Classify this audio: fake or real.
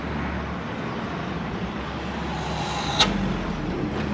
real